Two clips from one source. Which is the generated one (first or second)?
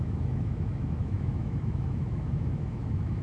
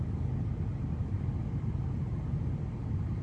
first